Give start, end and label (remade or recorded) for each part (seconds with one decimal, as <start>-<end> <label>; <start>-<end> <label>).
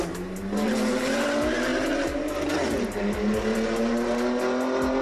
0.0-5.0 recorded